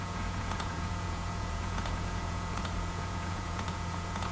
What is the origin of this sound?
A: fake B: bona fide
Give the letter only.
A